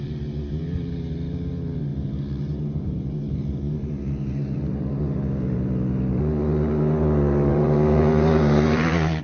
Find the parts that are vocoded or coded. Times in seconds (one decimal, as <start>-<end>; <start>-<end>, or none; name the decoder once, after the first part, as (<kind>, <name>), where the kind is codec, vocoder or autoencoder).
1.9-5.0 (vocoder, BigVGAN v2); 7.5-9.2